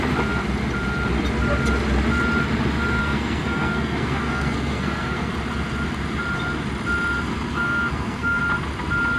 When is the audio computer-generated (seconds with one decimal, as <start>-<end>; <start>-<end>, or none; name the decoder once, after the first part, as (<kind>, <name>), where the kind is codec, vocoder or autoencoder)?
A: 3.0-5.3 (codec, SNAC); 7.5-8.4